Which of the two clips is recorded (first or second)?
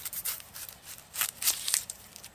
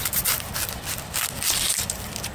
second